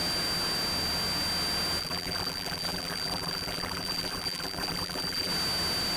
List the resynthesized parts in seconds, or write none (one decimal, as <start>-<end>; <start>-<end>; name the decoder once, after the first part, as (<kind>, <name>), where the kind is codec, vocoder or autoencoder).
1.8-5.3 (vocoder, BigVGAN v2)